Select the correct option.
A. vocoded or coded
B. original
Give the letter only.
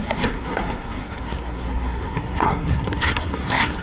A